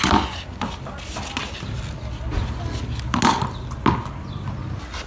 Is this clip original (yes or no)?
yes